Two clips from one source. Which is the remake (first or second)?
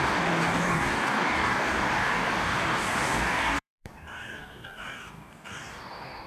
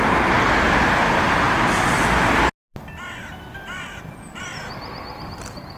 first